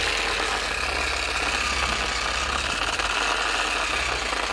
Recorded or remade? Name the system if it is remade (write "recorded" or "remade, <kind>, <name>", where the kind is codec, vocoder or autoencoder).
recorded